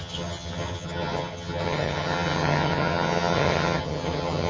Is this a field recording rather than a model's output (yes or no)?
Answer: no